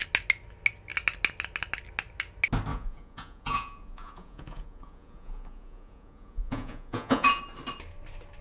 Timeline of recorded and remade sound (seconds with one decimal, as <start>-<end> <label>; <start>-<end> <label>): 0.0-2.7 recorded; 2.7-7.4 remade; 7.4-8.4 recorded